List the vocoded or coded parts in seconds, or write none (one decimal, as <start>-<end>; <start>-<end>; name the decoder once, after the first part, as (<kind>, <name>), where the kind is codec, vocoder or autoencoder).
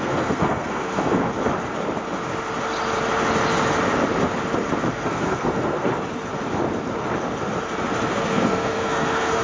0.0-1.2 (codec, SNAC); 4.9-5.9; 8.1-9.4